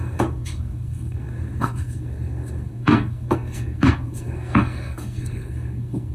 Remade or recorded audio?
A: remade